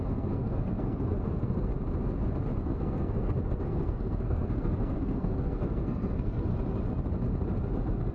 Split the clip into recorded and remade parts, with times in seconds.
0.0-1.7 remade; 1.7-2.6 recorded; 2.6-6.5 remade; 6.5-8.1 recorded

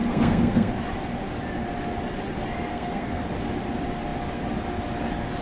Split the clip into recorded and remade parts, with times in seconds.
0.0-0.7 remade; 0.7-2.7 recorded; 2.7-3.2 remade; 3.2-5.4 recorded

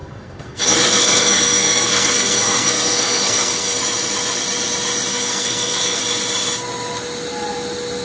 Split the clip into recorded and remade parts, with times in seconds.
0.0-3.8 remade; 3.8-5.1 recorded; 5.1-6.0 remade; 6.0-8.0 recorded

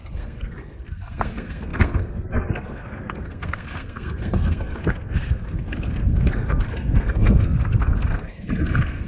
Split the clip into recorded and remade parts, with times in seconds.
0.0-9.1 remade

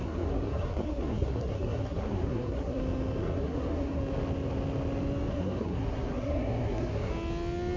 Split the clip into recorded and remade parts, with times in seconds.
0.0-2.8 remade; 2.8-3.2 recorded; 3.2-4.0 remade; 4.0-5.3 recorded; 5.3-7.1 remade; 7.1-7.8 recorded

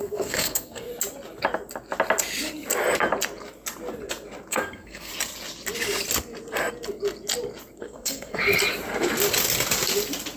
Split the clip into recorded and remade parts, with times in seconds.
0.0-0.9 remade; 0.9-4.5 recorded; 4.5-5.1 remade; 5.1-7.8 recorded; 7.8-8.4 remade; 8.4-10.4 recorded

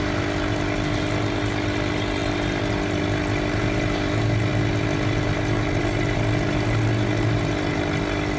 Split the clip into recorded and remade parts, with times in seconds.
0.0-8.4 recorded

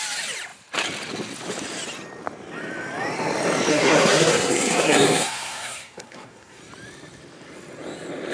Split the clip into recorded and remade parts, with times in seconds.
0.0-3.7 recorded; 3.7-6.6 remade; 6.6-8.3 recorded